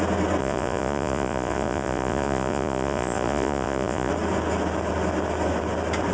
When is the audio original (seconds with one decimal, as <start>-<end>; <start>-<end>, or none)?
0.0-0.4; 4.1-6.1